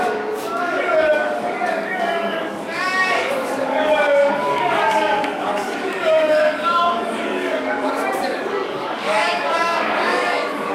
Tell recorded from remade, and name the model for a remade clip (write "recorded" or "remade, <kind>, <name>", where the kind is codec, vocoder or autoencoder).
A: remade, codec, DAC